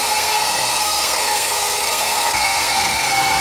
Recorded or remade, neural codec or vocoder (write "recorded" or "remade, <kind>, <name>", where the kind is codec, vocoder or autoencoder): remade, codec, SNAC